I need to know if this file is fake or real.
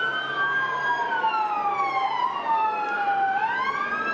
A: real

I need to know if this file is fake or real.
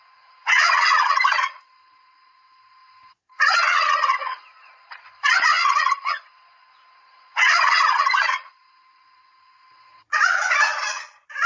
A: fake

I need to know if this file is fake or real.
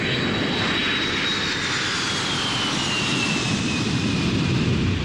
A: real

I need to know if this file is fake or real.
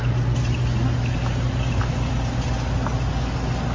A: real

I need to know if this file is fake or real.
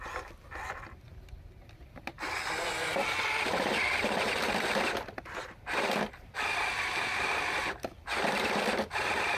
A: fake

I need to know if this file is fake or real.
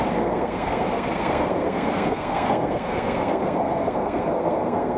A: fake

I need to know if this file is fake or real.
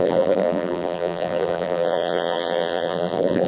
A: fake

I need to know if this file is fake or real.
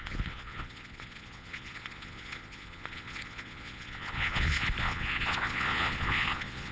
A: fake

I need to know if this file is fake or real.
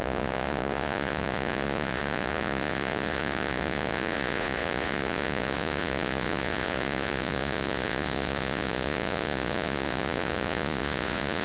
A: fake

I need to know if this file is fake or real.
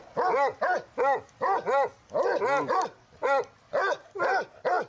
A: real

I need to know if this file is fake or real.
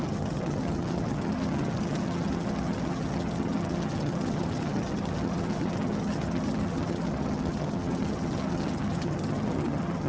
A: fake